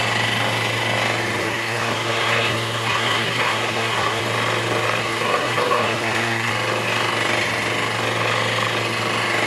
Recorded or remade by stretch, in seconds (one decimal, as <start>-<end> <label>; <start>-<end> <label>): 0.0-1.4 recorded; 1.4-4.2 remade; 4.2-5.0 recorded; 5.0-6.5 remade; 6.5-9.5 recorded